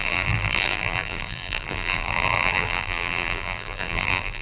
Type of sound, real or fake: fake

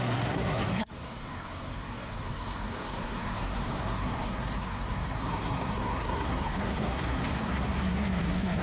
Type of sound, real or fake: fake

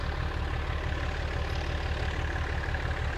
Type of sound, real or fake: real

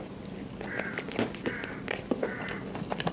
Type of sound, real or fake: real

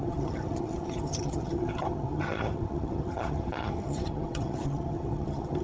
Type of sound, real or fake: fake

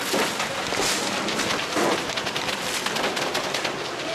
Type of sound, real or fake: real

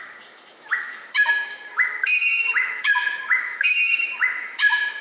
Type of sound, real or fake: fake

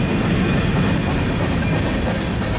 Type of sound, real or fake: real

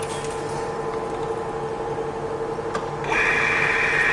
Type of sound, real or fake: real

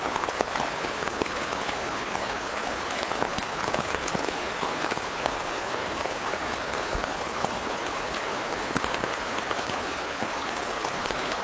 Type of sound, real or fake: fake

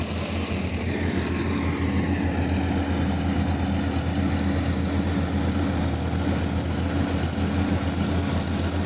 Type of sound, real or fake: real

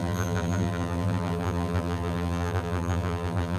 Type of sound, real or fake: fake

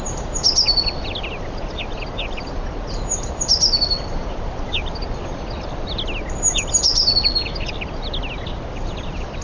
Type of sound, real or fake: real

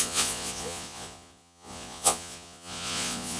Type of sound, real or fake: fake